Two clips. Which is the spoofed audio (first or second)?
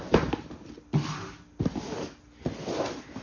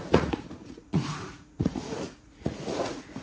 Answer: second